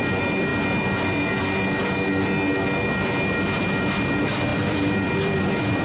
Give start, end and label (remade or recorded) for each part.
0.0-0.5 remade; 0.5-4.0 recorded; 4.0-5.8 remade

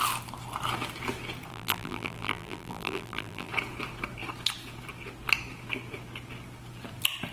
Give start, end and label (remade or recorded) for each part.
0.0-1.5 recorded; 1.5-3.5 remade; 3.5-7.3 recorded

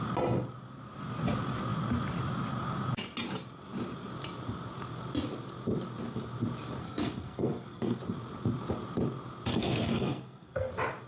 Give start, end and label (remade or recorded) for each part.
0.0-6.8 recorded; 6.8-8.0 remade; 8.0-9.5 recorded; 9.5-10.7 remade; 10.7-11.1 recorded

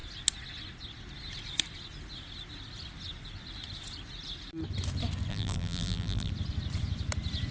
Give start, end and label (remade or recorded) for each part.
0.0-5.3 recorded; 5.3-6.3 remade; 6.3-7.5 recorded

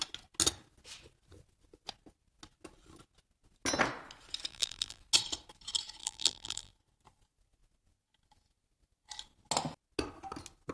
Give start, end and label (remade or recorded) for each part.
0.0-4.5 recorded; 4.5-5.0 remade; 5.0-6.0 recorded; 6.0-6.7 remade; 6.7-10.7 recorded